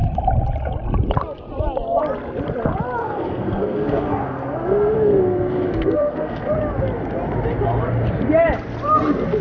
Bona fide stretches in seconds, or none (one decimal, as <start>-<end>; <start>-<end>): 0.0-3.0; 6.5-9.4